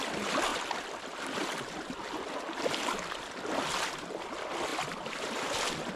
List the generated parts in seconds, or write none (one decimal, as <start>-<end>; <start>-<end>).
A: none